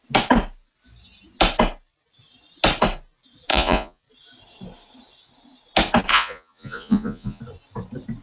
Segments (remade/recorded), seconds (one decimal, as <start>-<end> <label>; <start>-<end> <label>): 0.0-3.5 recorded; 3.5-4.0 remade; 4.0-6.1 recorded; 6.1-7.4 remade; 7.4-8.2 recorded